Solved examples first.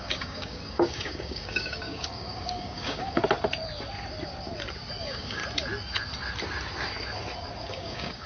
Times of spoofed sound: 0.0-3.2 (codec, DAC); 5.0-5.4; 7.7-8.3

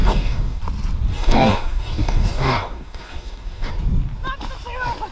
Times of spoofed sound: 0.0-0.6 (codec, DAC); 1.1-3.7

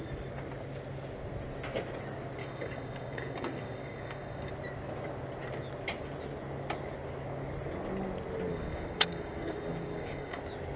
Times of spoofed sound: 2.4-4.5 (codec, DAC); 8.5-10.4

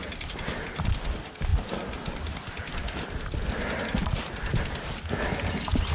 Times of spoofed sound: none

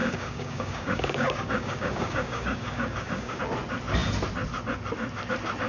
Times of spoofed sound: 0.0-3.4 (codec, DAC)

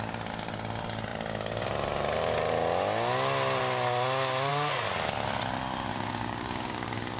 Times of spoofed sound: 5.9-7.2 (codec, DAC)